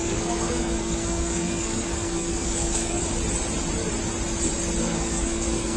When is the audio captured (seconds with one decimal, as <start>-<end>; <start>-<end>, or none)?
3.0-4.8